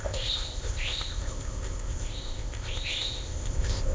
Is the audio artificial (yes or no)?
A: yes